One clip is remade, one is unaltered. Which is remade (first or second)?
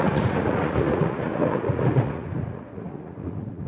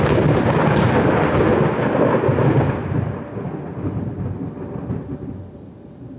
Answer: first